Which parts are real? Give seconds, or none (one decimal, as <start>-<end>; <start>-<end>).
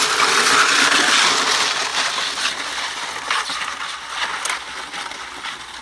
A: 0.0-5.8